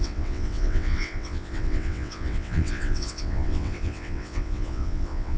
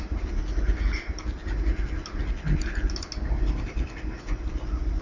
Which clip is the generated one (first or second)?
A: first